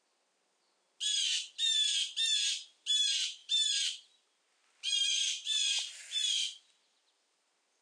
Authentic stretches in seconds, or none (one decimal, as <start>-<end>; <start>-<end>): 0.0-7.8